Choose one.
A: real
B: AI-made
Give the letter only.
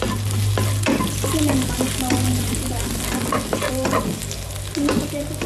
A